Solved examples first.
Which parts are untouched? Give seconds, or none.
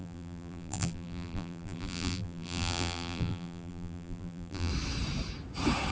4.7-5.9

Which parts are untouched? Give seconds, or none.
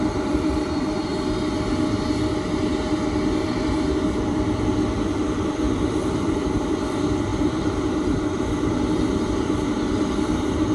1.1-3.4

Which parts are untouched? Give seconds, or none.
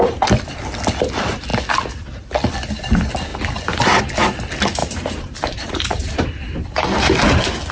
0.0-4.8; 7.1-7.7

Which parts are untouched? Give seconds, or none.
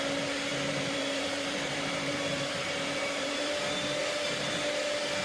0.0-0.5; 3.6-5.2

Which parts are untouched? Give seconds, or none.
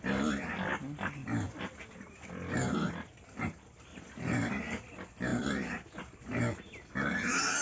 0.0-3.9; 4.5-7.6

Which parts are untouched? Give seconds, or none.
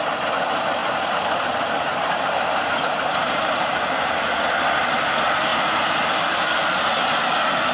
0.0-0.8; 4.4-7.7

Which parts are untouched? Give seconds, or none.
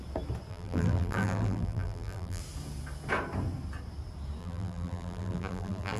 0.0-0.5; 2.4-4.4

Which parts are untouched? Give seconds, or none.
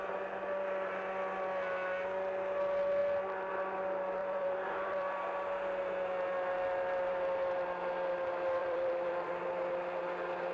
0.0-4.2; 5.2-8.6; 9.4-10.5